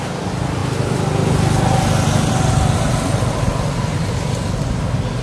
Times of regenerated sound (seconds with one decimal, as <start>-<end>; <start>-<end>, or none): none